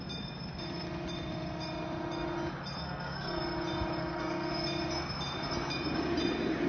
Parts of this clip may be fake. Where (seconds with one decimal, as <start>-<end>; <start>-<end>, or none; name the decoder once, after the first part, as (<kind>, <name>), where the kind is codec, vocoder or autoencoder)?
2.8-3.4 (codec, SNAC); 4.0-4.5